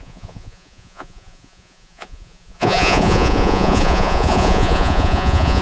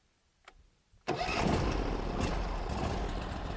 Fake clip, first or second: first